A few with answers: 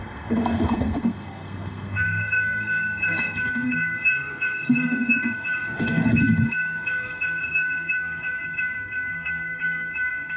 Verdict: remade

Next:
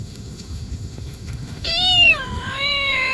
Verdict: remade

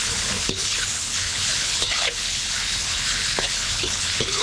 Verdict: remade